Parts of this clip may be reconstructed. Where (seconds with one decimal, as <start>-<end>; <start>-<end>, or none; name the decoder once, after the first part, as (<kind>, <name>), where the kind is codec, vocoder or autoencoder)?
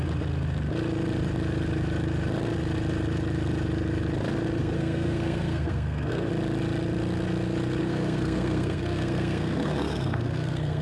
4.6-6.3 (codec, SNAC); 7.8-10.8